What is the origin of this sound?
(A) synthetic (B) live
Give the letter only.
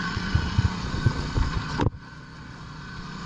A